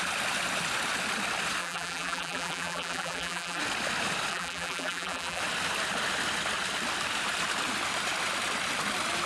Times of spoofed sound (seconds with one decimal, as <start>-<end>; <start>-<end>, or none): 1.6-3.6; 4.3-5.4